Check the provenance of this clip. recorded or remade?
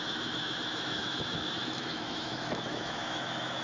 remade